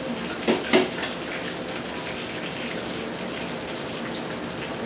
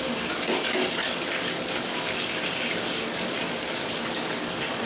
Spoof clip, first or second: second